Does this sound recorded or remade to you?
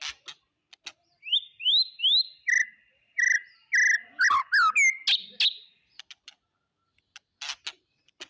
recorded